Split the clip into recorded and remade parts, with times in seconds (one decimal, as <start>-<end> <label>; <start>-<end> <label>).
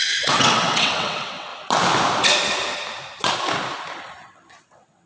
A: 0.0-1.5 remade; 1.5-4.6 recorded; 4.6-5.1 remade